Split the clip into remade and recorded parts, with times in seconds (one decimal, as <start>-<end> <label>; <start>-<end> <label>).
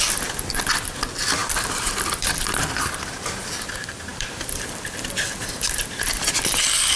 0.0-1.4 recorded; 1.4-2.4 remade; 2.4-4.1 recorded; 4.1-6.2 remade; 6.2-7.0 recorded